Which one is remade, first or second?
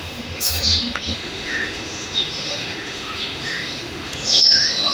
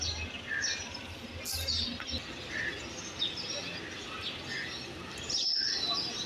first